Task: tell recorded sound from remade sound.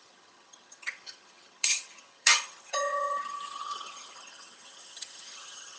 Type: remade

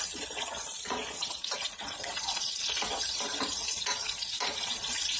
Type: remade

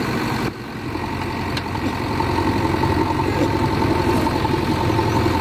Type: recorded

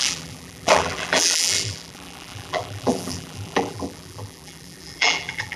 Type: remade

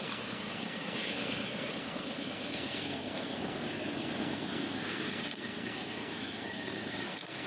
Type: remade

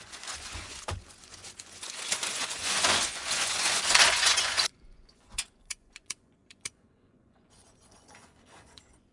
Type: remade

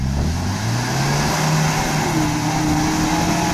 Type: recorded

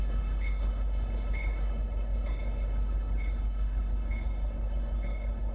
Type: remade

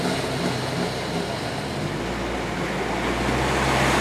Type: recorded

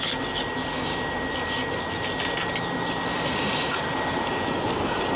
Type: recorded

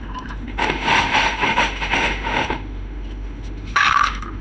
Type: remade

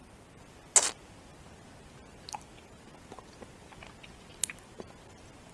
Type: recorded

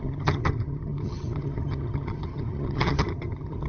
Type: remade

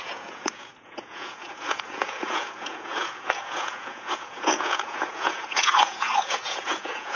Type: remade